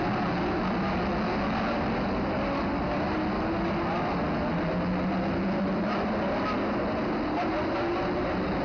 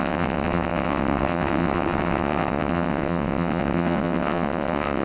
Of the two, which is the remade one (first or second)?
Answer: second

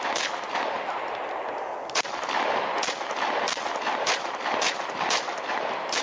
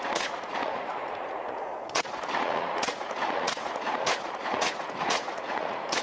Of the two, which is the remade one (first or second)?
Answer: second